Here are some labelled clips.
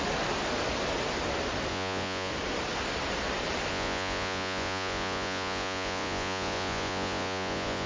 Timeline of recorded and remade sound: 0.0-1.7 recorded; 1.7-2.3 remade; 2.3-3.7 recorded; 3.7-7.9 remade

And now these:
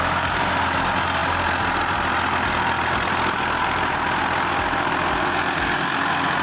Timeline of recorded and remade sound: 0.0-1.2 recorded; 1.2-4.2 remade; 4.2-6.4 recorded

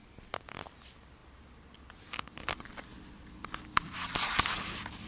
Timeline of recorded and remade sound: 0.0-5.1 recorded